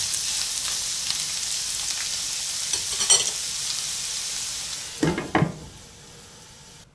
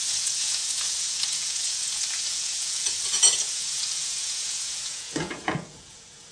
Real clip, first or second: first